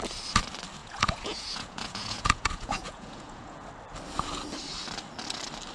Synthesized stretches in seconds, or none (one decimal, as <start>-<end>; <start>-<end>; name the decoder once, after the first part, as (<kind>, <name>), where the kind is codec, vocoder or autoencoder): 0.8-3.7 (vocoder, Vocos)